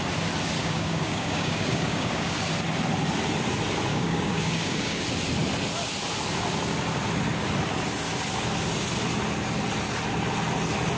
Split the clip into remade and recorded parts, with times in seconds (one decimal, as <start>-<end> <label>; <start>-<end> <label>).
0.0-0.6 recorded; 0.6-2.4 remade; 2.4-3.9 recorded; 3.9-5.0 remade; 5.0-11.0 recorded